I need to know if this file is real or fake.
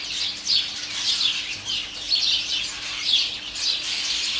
real